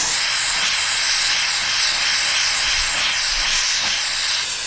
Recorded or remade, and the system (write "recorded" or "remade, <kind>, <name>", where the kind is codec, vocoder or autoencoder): recorded